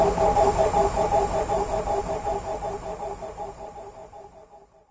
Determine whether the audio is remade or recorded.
recorded